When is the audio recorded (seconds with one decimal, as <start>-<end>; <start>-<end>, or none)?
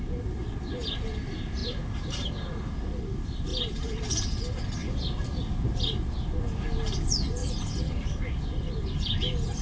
0.0-1.6; 2.3-3.5; 4.0-9.6